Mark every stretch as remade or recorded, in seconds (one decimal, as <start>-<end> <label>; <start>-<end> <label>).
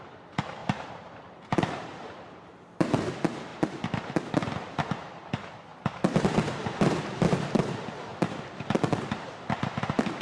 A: 0.0-0.6 recorded; 0.6-3.0 remade; 3.0-3.5 recorded; 3.5-4.1 remade; 4.1-10.2 recorded